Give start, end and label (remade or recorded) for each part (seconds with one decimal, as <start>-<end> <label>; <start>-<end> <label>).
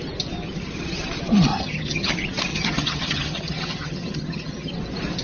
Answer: 0.0-1.5 recorded; 1.5-2.1 remade; 2.1-2.5 recorded; 2.5-4.7 remade; 4.7-5.2 recorded